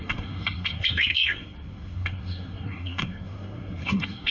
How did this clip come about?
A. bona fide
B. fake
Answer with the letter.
B